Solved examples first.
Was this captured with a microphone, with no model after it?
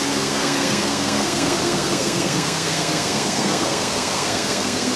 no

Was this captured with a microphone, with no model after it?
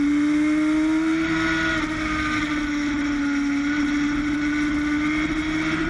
yes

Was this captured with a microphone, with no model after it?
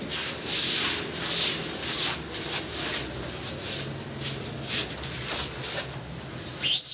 yes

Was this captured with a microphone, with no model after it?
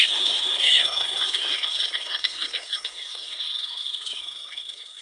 no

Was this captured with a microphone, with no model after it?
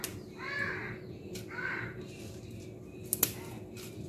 yes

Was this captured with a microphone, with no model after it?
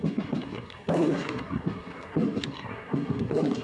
no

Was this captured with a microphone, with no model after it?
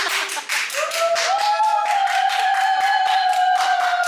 yes